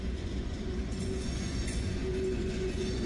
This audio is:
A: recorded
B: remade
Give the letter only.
B